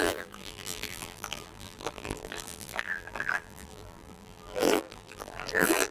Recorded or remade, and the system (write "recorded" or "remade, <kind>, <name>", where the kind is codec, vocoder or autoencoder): remade, vocoder, BigVGAN v2